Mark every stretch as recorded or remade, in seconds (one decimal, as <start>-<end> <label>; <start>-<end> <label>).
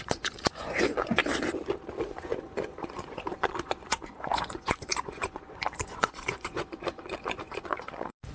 0.0-1.2 remade; 1.2-2.0 recorded; 2.0-8.3 remade